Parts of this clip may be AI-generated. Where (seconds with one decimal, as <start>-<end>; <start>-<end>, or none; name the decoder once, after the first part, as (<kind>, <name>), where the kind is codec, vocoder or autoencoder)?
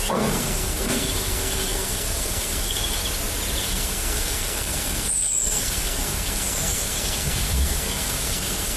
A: 0.0-3.0 (codec, SNAC); 3.6-8.8